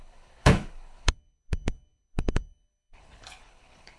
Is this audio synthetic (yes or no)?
yes